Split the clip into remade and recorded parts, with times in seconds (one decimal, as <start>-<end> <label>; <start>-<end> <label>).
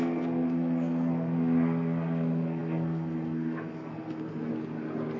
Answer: 0.0-4.5 remade; 4.5-5.2 recorded